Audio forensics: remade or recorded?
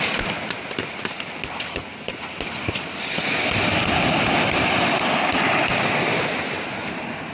remade